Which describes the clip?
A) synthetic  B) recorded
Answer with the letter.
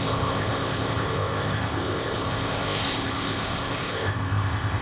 A